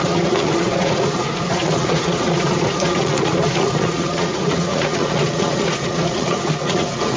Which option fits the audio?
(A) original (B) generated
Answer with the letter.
B